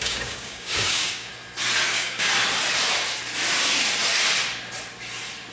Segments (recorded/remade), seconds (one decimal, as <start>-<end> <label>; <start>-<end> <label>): 0.0-1.3 remade; 1.3-1.9 recorded; 1.9-2.3 remade; 2.3-5.5 recorded